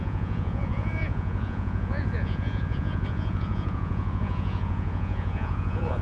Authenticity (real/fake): fake